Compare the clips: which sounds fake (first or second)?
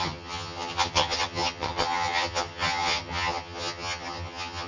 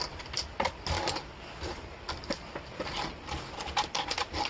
first